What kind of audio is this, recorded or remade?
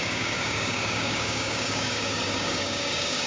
remade